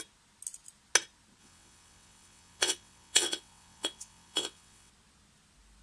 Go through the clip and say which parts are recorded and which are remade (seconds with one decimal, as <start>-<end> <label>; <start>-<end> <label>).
0.0-1.4 recorded; 1.4-4.9 remade; 4.9-5.8 recorded